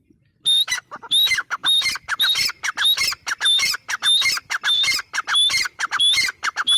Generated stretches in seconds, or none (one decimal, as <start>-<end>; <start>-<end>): none